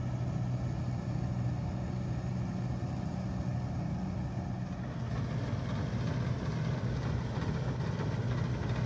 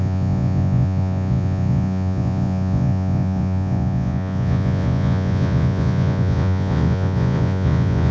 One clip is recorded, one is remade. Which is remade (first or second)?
second